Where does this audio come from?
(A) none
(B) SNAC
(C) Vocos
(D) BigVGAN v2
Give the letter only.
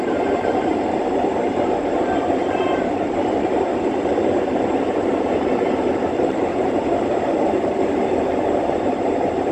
D